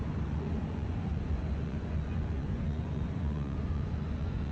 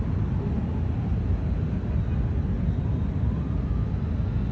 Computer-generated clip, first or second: first